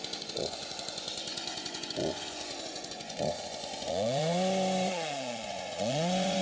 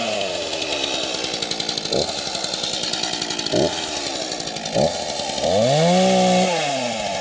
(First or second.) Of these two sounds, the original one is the second